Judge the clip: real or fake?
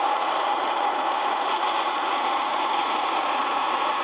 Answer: fake